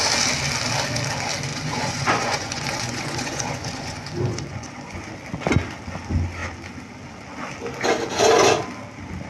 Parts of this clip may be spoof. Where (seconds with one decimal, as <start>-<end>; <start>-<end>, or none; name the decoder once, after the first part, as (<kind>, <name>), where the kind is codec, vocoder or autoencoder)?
1.5-5.0 (vocoder, Vocos)